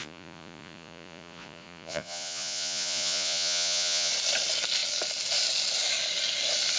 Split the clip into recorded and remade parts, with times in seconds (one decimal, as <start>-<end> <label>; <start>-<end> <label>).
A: 0.0-4.1 remade; 4.1-6.8 recorded